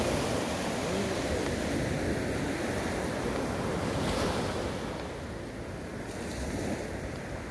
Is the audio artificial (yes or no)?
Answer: no